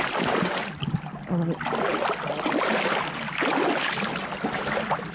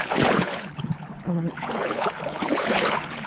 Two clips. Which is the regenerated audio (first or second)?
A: second